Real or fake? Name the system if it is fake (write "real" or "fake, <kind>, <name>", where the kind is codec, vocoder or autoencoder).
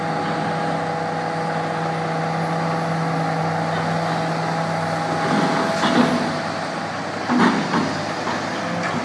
real